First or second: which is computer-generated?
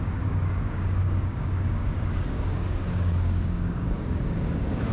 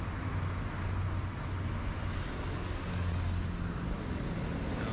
first